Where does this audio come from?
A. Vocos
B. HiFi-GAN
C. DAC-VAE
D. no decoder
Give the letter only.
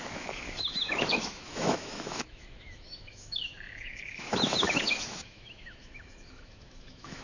C